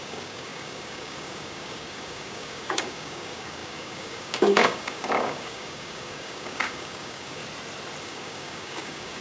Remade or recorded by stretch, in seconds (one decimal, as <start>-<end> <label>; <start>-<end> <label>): 0.0-7.4 remade; 7.4-8.0 recorded; 8.0-9.2 remade